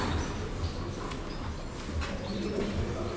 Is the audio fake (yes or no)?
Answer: no